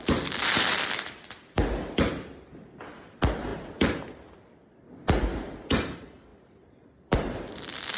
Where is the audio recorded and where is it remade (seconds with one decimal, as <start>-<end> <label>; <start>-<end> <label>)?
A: 0.0-8.0 remade